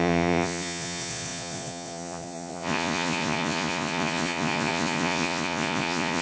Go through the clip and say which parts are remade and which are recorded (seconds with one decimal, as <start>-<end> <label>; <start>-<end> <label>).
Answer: 0.0-6.2 remade